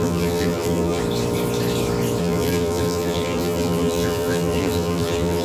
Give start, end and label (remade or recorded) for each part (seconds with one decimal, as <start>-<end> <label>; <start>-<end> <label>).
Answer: 0.0-1.0 remade; 1.0-2.2 recorded; 2.2-5.4 remade